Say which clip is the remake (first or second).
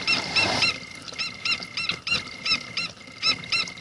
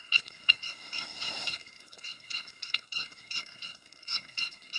second